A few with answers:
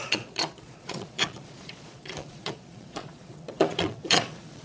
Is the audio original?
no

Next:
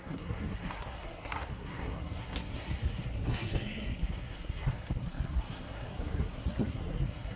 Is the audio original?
no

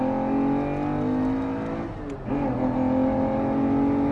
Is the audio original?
yes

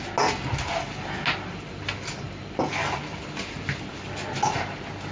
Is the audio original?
yes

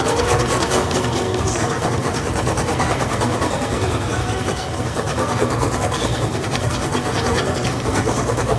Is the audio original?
no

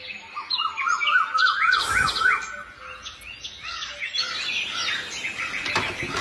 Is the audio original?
yes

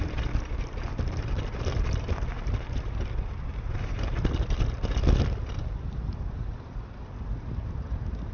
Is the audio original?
no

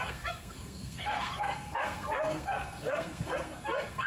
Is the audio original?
no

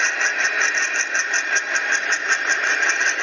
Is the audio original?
yes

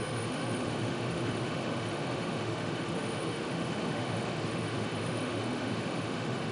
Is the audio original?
no